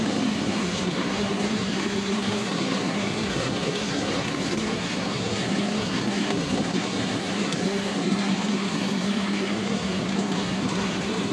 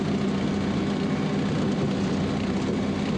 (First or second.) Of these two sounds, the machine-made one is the first